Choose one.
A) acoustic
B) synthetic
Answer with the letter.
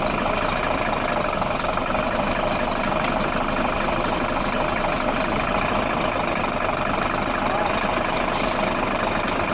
B